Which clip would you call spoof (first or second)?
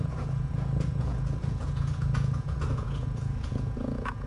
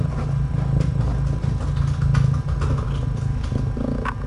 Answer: first